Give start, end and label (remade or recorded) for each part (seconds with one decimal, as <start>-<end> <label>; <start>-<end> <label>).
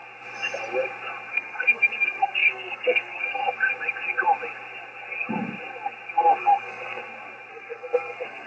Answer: 0.0-1.3 recorded; 1.3-3.4 remade; 3.4-6.4 recorded; 6.4-7.0 remade; 7.0-7.5 recorded; 7.5-8.5 remade